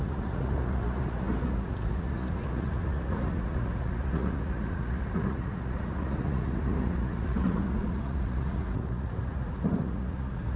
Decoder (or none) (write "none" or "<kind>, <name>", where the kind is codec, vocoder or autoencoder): vocoder, Vocos